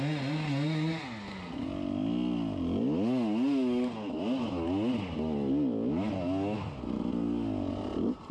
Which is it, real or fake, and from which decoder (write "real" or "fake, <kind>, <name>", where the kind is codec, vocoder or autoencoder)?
real